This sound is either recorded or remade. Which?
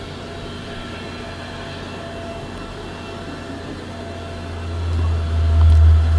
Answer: recorded